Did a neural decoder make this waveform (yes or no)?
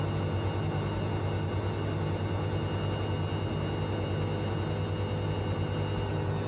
no